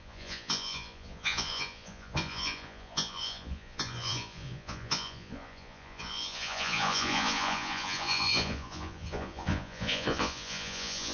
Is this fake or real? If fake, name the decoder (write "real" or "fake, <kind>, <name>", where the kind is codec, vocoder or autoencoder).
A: fake, vocoder, Vocos